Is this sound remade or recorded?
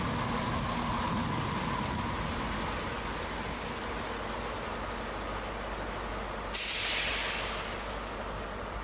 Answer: recorded